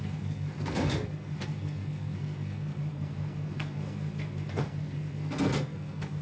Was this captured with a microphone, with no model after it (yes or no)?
no